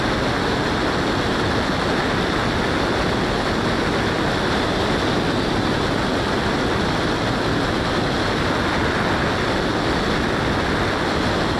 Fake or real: real